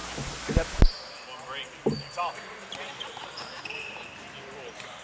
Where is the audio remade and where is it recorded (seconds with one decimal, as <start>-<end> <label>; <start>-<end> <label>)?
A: 0.0-5.0 recorded